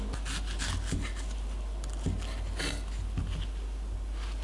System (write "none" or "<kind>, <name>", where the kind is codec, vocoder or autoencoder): none